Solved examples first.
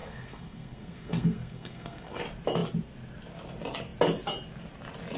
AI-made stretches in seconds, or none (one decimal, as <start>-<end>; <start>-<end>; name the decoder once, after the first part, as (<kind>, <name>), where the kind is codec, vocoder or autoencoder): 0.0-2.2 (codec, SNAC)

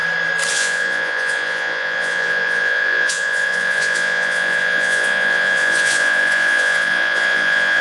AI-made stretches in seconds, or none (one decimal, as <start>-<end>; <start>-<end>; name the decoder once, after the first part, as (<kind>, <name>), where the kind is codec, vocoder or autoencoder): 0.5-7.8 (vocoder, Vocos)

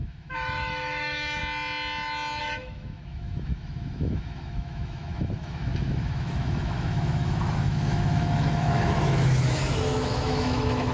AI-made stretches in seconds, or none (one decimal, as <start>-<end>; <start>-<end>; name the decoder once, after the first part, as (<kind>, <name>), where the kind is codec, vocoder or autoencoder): 0.0-1.4 (autoencoder, DAC-VAE); 2.4-10.9